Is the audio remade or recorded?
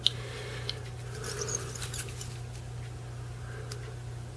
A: recorded